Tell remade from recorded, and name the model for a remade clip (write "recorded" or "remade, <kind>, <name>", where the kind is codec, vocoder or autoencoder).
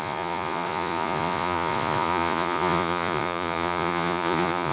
remade, vocoder, Vocos